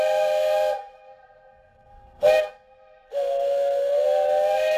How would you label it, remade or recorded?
remade